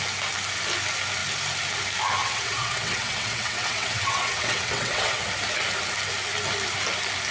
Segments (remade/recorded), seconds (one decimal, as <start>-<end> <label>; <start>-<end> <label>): 0.0-2.2 recorded; 2.2-5.2 remade; 5.2-7.3 recorded